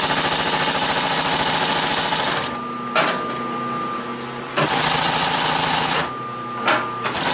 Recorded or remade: recorded